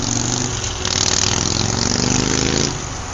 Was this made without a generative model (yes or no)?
yes